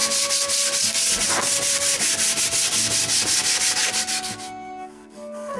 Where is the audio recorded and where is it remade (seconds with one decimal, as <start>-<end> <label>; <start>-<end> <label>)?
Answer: 0.0-4.1 recorded; 4.1-5.6 remade